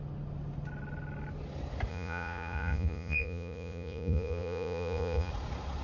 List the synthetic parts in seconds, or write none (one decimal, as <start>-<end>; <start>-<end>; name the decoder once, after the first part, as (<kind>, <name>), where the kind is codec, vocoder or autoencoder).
1.9-5.3 (vocoder, Vocos)